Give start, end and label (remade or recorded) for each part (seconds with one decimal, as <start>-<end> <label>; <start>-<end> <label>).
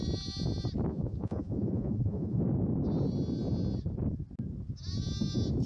0.0-0.9 recorded; 0.9-2.4 remade; 2.4-5.7 recorded